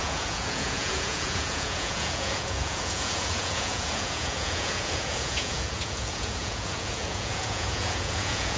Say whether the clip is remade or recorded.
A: remade